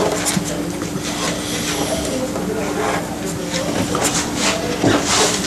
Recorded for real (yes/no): yes